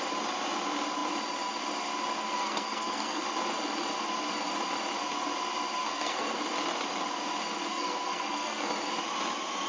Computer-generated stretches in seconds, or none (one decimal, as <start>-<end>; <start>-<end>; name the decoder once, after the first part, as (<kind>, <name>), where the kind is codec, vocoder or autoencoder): 2.2-3.2 (codec, SNAC); 5.8-6.4; 7.7-8.7